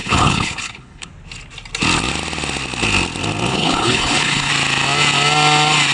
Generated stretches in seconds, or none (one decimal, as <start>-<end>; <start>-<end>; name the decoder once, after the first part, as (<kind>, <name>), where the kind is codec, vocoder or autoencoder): 0.0-1.1 (codec, HILCodec); 3.5-4.5

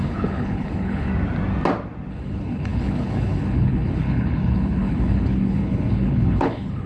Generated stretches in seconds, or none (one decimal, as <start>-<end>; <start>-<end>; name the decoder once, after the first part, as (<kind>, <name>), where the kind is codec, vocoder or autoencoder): 0.0-1.1 (codec, HILCodec); 2.1-6.9

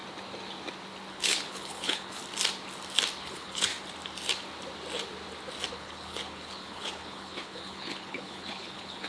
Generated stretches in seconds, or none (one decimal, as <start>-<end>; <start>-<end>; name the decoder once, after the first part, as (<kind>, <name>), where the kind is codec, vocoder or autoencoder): 1.1-2.2 (codec, HILCodec); 3.2-3.7; 5.7-9.1

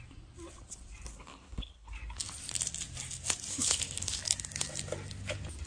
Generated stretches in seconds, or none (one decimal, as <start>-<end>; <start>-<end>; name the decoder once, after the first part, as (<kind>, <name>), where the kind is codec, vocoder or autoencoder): 1.1-1.9 (codec, HILCodec); 3.5-4.2

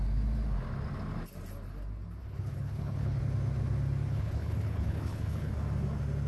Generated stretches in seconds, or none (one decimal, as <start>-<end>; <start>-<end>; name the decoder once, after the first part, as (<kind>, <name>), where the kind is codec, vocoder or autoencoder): 2.2-3.2 (codec, HILCodec); 4.1-5.5

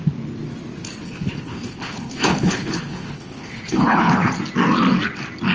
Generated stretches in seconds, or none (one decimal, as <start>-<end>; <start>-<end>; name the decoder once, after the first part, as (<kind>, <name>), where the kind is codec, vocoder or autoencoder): 1.0-4.3 (codec, HILCodec)